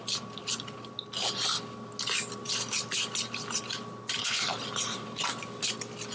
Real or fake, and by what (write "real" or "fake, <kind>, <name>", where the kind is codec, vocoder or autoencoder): real